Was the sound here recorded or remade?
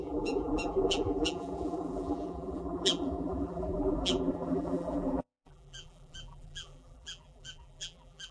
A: remade